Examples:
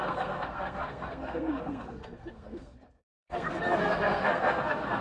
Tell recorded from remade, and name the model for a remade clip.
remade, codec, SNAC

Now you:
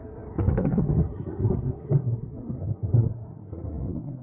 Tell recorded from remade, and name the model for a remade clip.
remade, codec, SNAC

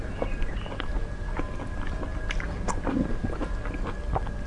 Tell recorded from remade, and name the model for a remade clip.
recorded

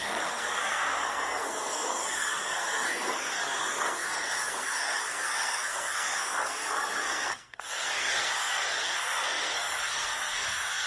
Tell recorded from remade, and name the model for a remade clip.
remade, codec, SNAC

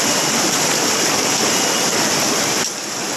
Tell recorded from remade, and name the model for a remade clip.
recorded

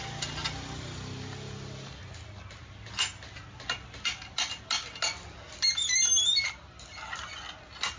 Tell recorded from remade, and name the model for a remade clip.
recorded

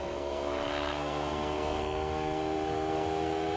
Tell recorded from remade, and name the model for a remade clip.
remade, codec, SNAC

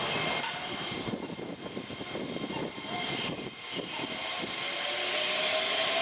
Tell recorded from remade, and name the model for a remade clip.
recorded